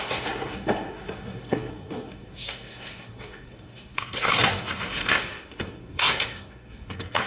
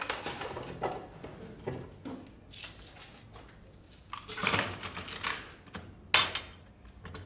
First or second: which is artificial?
first